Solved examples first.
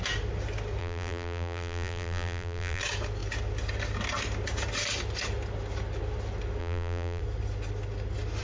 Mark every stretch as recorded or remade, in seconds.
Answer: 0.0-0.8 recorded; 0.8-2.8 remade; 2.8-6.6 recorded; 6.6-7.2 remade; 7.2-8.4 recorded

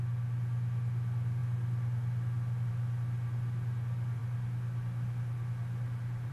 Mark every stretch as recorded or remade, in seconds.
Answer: 0.0-6.3 recorded

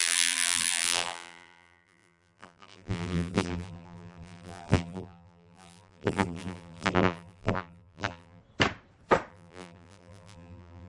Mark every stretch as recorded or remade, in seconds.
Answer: 0.0-8.4 remade; 8.4-9.3 recorded; 9.3-10.9 remade

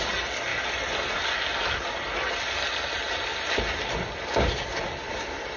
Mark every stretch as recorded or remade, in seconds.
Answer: 0.0-5.6 recorded

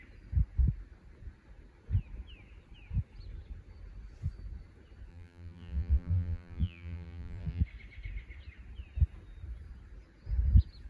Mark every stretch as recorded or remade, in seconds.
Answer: 0.0-5.1 recorded; 5.1-7.6 remade; 7.6-10.9 recorded

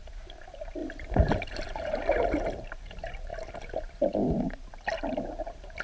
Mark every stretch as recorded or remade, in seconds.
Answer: 0.0-3.3 remade; 3.3-4.4 recorded; 4.4-5.8 remade

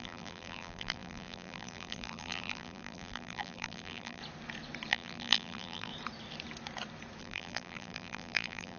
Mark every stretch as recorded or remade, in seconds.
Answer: 0.0-4.2 remade; 4.2-4.9 recorded; 4.9-5.9 remade; 5.9-7.2 recorded; 7.2-8.8 remade

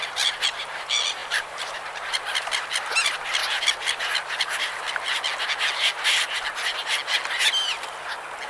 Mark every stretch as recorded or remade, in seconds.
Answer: 0.0-1.2 recorded; 1.2-2.5 remade; 2.5-8.5 recorded